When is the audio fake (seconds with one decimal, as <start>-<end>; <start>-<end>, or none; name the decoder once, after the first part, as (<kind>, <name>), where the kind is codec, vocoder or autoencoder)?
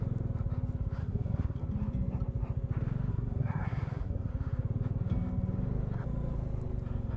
1.0-1.6 (codec, SNAC); 3.1-4.3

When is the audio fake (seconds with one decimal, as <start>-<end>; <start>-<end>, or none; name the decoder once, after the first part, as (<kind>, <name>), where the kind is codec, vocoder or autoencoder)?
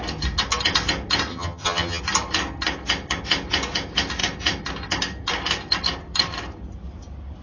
1.3-2.0 (vocoder, HiFi-GAN)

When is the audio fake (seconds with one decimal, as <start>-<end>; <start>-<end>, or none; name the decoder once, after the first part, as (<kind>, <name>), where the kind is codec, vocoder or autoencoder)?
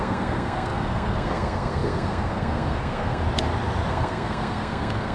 0.0-3.2 (codec, SNAC); 3.9-5.1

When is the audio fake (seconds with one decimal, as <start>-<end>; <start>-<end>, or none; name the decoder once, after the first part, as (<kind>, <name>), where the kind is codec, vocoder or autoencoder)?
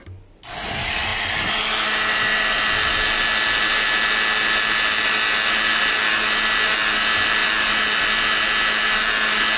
none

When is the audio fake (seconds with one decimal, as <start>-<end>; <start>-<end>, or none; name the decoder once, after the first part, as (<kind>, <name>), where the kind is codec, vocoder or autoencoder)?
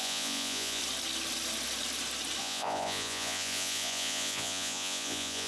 0.0-0.8 (vocoder, Vocos); 2.4-5.5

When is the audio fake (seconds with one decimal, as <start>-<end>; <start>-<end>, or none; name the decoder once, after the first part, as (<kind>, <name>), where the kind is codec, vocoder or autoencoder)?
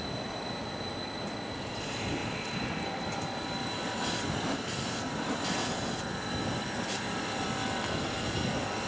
2.2-5.7 (vocoder, BigVGAN v2)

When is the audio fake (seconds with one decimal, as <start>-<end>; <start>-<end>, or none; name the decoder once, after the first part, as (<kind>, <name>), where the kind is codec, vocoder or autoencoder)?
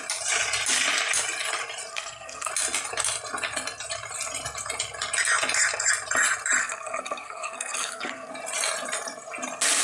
1.9-2.5 (codec, SNAC); 6.6-8.3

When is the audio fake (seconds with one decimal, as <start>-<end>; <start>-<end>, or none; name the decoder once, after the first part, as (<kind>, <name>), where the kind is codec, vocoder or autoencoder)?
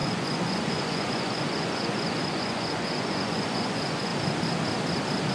0.0-4.1 (vocoder, Vocos)